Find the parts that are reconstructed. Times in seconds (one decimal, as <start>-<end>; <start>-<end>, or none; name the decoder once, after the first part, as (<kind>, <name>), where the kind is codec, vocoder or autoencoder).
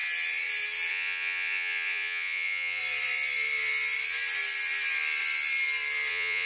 0.9-2.8 (vocoder, Vocos); 6.1-6.5